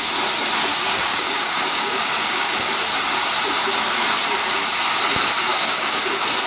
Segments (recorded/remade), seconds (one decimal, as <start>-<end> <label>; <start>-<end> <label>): 0.0-0.7 recorded; 0.7-2.7 remade; 2.7-5.5 recorded; 5.5-6.0 remade; 6.0-6.5 recorded